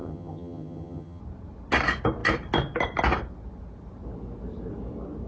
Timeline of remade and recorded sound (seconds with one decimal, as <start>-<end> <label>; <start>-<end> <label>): 0.0-1.2 remade; 1.2-5.3 recorded